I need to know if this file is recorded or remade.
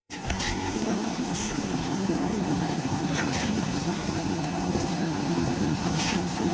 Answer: remade